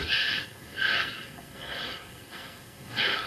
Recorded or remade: remade